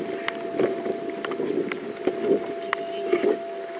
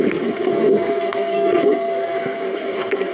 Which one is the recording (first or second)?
first